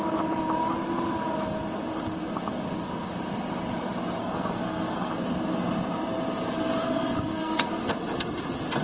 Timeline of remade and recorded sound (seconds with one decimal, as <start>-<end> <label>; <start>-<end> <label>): 0.0-4.2 recorded; 4.2-5.1 remade; 5.1-6.8 recorded; 6.8-7.9 remade; 7.9-8.8 recorded